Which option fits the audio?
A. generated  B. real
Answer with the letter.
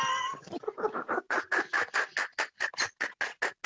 B